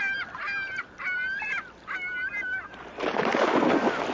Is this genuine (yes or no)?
yes